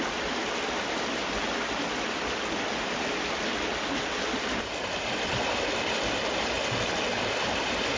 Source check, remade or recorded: recorded